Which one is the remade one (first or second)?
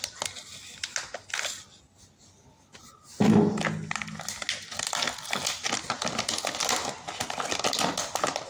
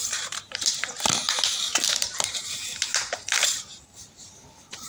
second